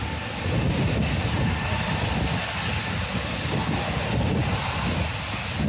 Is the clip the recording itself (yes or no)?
yes